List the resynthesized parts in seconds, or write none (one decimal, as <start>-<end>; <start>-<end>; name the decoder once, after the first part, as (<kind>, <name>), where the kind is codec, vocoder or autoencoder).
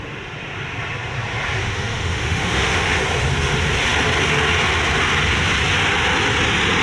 1.6-3.0 (autoencoder, DAC-VAE)